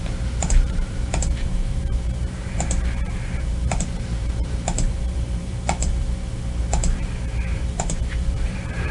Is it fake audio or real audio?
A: fake